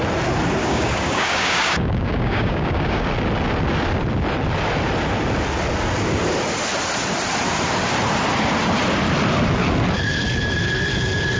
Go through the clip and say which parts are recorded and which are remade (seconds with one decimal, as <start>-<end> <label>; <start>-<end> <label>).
0.0-0.6 recorded; 0.6-3.0 remade; 3.0-11.4 recorded